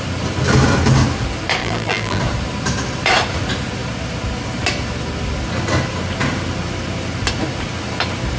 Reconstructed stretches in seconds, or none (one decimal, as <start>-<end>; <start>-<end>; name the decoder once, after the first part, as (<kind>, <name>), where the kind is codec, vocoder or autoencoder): 1.6-2.2 (vocoder, BigVGAN v2)